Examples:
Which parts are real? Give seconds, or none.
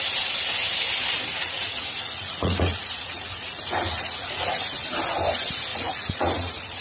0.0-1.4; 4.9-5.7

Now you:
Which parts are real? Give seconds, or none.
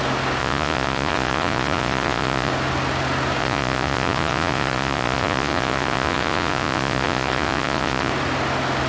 0.0-0.4; 2.5-3.4; 8.1-8.9